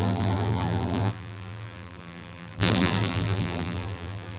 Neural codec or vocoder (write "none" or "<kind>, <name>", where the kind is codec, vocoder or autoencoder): vocoder, BigVGAN v2